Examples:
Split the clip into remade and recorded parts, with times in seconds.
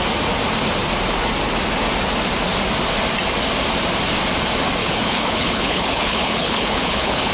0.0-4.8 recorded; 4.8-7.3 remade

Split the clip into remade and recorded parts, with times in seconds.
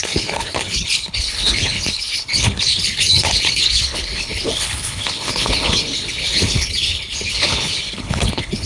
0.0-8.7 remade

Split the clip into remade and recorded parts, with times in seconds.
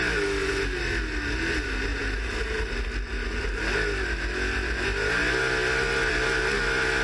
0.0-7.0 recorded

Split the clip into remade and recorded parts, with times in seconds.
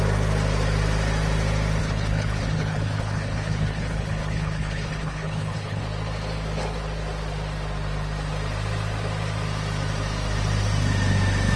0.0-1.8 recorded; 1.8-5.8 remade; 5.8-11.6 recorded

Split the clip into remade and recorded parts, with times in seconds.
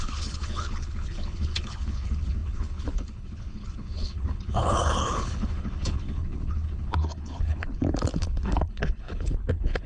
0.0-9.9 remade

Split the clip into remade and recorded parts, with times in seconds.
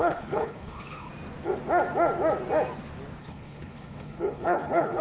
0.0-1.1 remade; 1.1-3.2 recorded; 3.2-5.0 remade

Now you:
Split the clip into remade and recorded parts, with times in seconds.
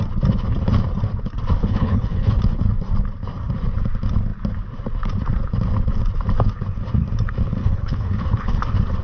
0.0-1.6 recorded; 1.6-2.4 remade; 2.4-7.6 recorded; 7.6-8.6 remade; 8.6-9.0 recorded